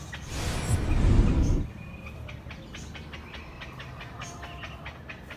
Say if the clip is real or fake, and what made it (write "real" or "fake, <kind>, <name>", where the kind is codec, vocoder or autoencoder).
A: real